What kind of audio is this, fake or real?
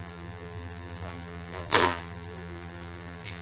fake